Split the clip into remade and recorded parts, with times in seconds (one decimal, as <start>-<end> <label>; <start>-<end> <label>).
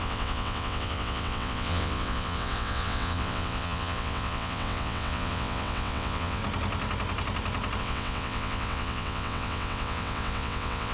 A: 0.0-6.4 remade; 6.4-7.8 recorded; 7.8-10.9 remade